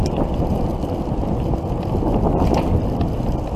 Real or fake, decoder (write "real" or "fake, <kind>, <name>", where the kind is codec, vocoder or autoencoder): real